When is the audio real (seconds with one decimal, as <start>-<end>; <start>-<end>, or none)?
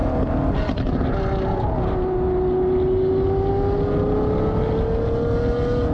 0.0-5.9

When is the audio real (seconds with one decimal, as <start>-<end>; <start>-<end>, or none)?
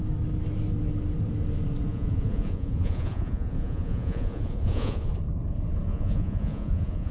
0.0-1.9; 5.1-5.9